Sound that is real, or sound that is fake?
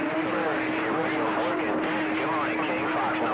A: real